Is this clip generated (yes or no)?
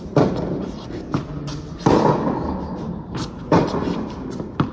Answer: no